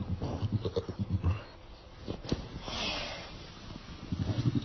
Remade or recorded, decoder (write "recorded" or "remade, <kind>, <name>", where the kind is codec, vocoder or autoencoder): recorded